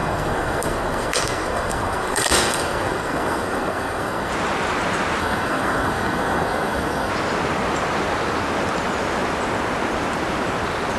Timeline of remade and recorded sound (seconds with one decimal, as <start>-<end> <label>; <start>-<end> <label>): 0.0-4.3 remade; 4.3-5.2 recorded; 5.2-7.1 remade; 7.1-11.0 recorded